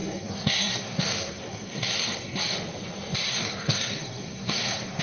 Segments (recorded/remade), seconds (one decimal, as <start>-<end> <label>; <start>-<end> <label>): 0.0-2.4 remade; 2.4-3.3 recorded; 3.3-5.0 remade